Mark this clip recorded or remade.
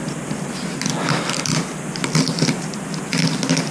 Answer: recorded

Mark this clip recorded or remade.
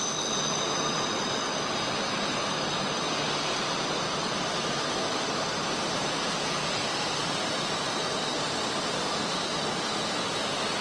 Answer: recorded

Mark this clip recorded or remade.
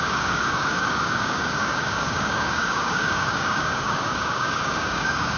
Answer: remade